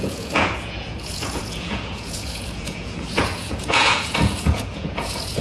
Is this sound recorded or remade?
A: remade